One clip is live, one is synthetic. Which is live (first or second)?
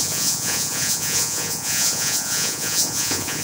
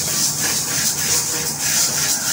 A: second